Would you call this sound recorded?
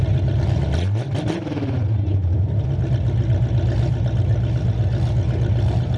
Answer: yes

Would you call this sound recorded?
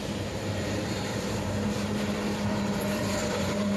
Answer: no